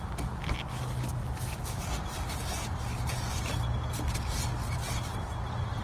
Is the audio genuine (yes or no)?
yes